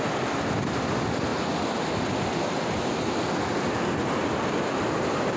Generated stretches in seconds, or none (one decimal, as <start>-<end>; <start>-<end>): none